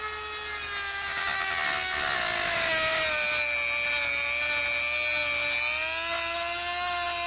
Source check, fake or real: real